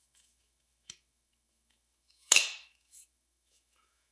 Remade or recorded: remade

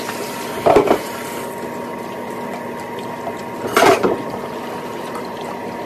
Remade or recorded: recorded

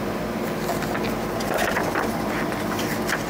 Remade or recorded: recorded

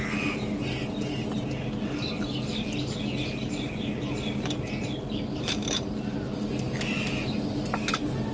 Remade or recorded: recorded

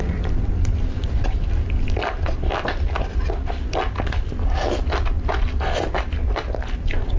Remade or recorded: recorded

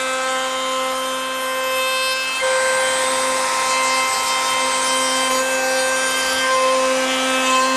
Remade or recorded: recorded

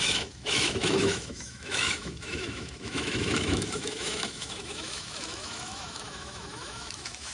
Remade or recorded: remade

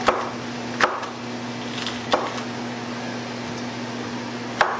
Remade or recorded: recorded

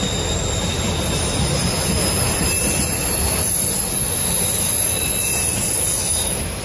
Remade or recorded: recorded